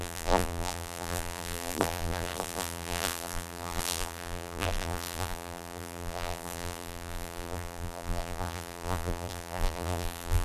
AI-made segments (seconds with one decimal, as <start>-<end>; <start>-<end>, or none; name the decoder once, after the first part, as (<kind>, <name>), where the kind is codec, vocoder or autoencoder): 0.0-10.4 (vocoder, BigVGAN v2)